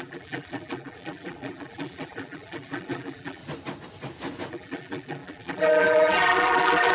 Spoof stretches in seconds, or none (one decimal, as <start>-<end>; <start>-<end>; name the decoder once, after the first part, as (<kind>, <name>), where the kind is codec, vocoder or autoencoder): 0.0-3.4 (vocoder, BigVGAN v2); 4.5-6.9